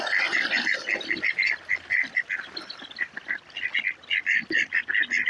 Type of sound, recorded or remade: recorded